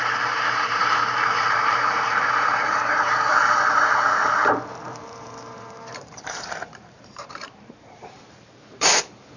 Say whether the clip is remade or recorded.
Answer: remade